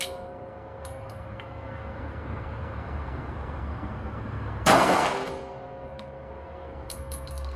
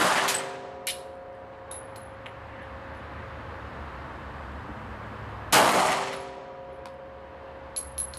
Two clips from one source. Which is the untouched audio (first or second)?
second